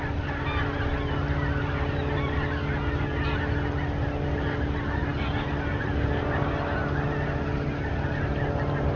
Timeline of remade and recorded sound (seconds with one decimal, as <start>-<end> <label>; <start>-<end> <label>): 0.0-9.0 recorded